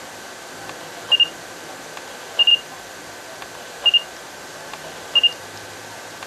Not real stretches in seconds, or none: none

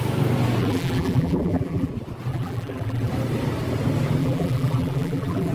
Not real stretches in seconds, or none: 0.6-1.9 (vocoder, BigVGAN v2); 2.3-3.1; 4.2-5.5

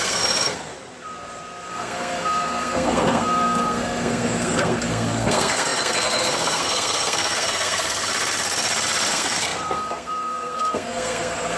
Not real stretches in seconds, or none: 0.0-0.7 (codec, SNAC); 1.7-8.1; 9.1-11.6